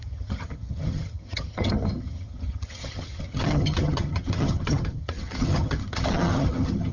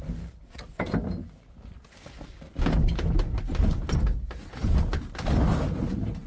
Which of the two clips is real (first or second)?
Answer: second